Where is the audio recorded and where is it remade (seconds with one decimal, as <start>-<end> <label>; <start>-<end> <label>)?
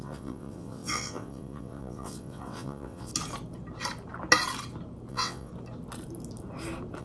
0.0-3.1 remade; 3.1-5.1 recorded; 5.1-5.5 remade; 5.5-7.0 recorded